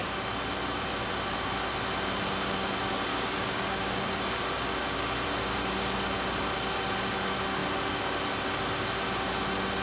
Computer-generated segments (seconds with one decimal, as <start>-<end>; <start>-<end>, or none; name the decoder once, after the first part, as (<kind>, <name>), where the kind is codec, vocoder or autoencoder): 3.1-4.2 (codec, DAC)